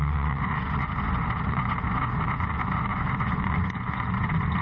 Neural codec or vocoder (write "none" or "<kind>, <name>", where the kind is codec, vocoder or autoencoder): vocoder, Vocos